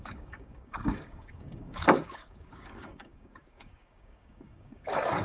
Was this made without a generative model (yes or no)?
no